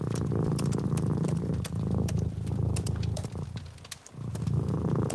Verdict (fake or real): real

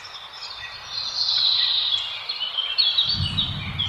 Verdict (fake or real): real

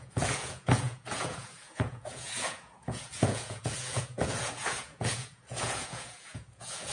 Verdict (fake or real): fake